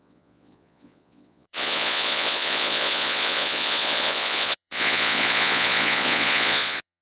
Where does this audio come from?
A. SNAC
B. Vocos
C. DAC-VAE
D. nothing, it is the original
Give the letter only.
B